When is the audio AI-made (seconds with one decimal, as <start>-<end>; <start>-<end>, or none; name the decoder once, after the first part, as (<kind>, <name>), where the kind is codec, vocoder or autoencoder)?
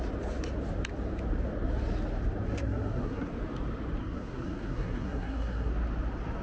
2.5-3.3 (codec, SNAC); 4.0-5.7